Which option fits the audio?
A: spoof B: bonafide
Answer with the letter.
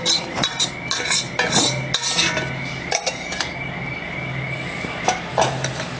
B